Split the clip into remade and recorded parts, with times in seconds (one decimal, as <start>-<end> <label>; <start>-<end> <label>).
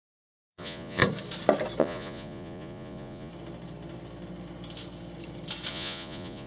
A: 0.0-1.0 remade; 1.0-1.8 recorded; 1.8-3.3 remade; 3.3-5.7 recorded; 5.7-6.5 remade